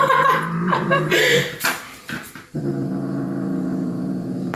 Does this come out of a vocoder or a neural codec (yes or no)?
yes